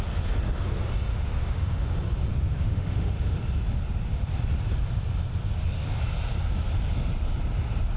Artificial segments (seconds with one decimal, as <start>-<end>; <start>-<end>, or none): 1.1-1.8; 2.3-3.4